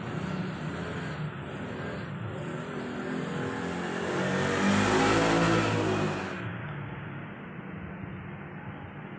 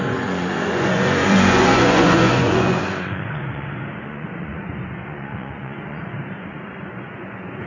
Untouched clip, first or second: first